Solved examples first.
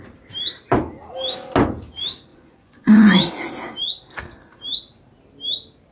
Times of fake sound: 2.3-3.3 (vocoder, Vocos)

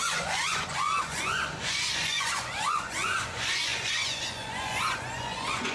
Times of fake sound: 0.0-5.7 (vocoder, Vocos)

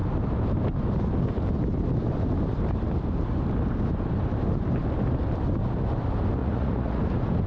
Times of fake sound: 6.4-7.0 (vocoder, Vocos)

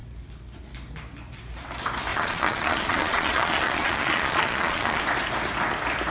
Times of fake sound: 2.1-5.0 (vocoder, Vocos)